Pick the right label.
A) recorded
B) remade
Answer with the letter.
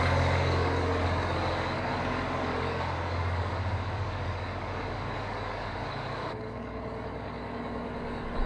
B